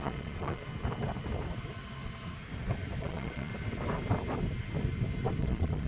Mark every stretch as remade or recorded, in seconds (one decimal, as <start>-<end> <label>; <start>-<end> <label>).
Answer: 0.0-0.6 remade; 0.6-3.0 recorded; 3.0-3.5 remade; 3.5-5.4 recorded; 5.4-5.9 remade